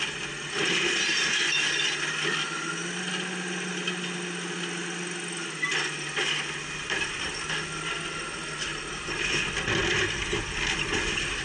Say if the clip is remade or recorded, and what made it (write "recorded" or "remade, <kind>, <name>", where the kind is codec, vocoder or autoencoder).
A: recorded